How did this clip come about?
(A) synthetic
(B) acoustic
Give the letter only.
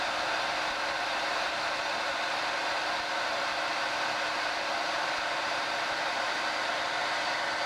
A